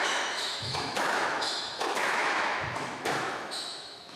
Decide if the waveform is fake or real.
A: fake